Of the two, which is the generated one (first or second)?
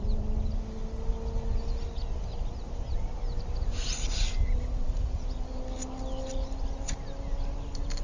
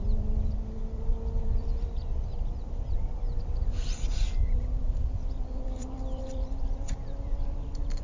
second